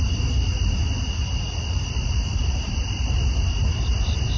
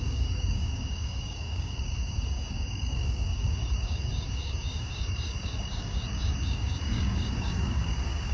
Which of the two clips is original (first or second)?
first